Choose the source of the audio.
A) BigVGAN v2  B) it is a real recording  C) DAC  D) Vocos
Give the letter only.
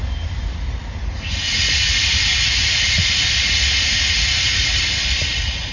A